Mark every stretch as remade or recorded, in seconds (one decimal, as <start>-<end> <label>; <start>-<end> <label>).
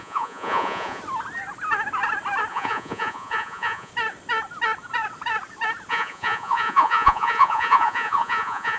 0.0-1.0 remade; 1.0-2.5 recorded; 2.5-3.9 remade; 3.9-5.9 recorded; 5.9-8.8 remade